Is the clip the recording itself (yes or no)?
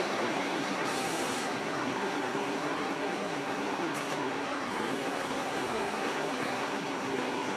no